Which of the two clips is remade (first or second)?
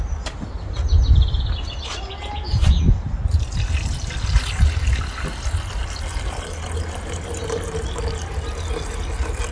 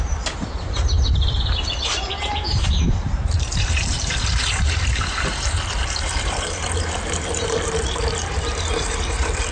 second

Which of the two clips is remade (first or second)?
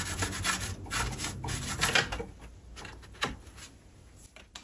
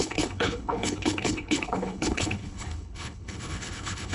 second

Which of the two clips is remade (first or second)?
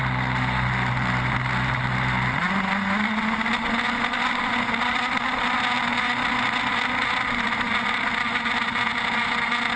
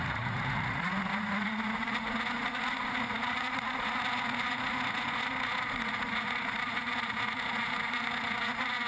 second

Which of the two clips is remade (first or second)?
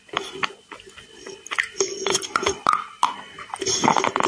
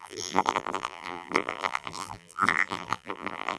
second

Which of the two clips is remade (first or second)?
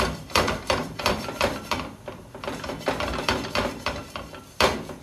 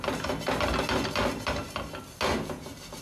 first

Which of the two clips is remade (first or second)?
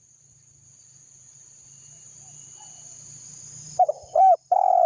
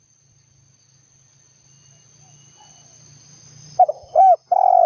first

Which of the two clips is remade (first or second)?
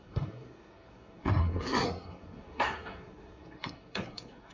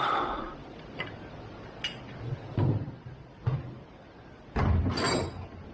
first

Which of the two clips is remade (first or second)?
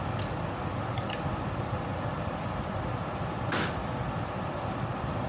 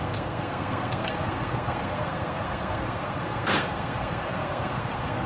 second